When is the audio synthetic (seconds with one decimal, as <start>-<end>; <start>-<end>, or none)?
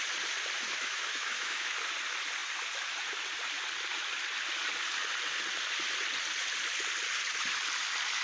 0.6-1.7